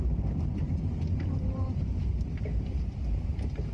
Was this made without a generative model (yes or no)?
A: no